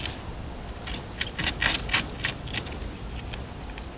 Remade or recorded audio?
recorded